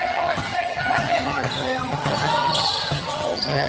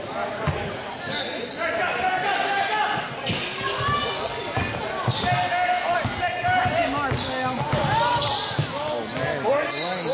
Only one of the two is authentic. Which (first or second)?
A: second